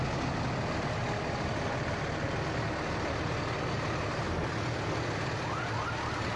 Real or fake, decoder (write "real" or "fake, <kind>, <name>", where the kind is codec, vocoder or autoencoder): real